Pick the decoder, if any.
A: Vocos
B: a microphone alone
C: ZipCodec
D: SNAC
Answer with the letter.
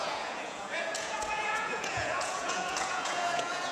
A